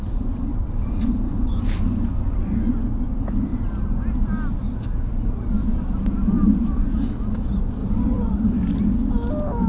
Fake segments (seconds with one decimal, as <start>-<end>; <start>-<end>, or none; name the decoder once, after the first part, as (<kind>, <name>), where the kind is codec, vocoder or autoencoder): 0.5-1.6 (vocoder, BigVGAN v2); 5.6-6.8; 7.8-8.3